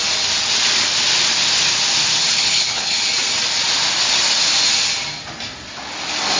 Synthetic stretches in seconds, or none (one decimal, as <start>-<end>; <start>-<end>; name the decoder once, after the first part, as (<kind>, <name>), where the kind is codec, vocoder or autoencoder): 2.3-3.1 (codec, HILCodec)